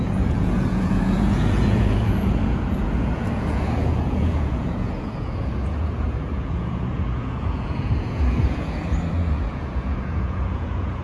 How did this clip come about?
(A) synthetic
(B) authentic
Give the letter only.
A